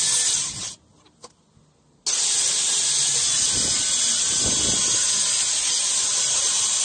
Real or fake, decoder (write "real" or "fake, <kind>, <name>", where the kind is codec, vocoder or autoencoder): real